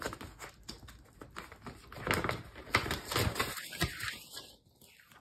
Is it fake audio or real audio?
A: real